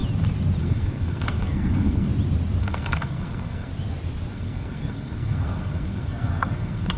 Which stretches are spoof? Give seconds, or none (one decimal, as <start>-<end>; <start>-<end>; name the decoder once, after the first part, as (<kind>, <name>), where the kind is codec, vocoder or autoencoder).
0.6-2.1 (codec, SNAC); 2.6-3.7; 4.3-7.0